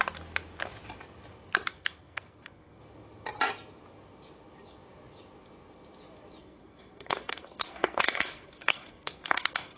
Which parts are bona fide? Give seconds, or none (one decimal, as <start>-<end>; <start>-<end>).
0.0-1.7; 2.8-6.4